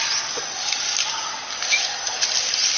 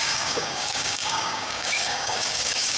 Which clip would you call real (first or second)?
first